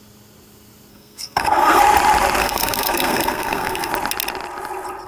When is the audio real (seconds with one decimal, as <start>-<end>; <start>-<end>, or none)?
0.0-0.9; 1.8-2.4; 3.9-5.1